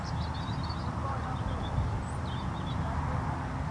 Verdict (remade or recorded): recorded